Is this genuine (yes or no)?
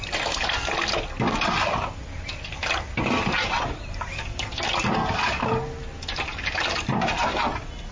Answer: yes